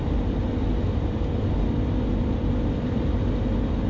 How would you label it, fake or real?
real